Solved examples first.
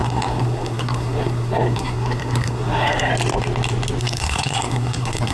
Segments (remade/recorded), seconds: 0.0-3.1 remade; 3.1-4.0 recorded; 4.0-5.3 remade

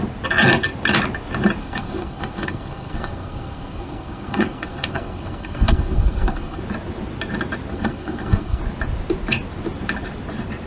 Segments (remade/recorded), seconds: 0.0-1.6 recorded; 1.6-6.6 remade; 6.6-7.7 recorded; 7.7-8.6 remade; 8.6-10.7 recorded

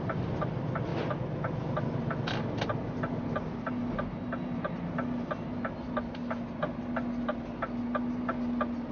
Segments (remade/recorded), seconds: 0.0-8.9 recorded

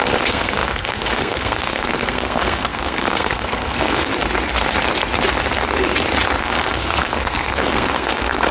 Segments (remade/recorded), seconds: 0.0-4.1 remade; 4.1-6.4 recorded; 6.4-8.5 remade